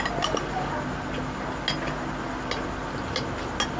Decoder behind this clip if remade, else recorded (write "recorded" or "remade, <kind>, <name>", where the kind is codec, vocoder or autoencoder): recorded